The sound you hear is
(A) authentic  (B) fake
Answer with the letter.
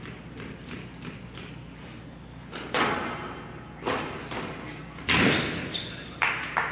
A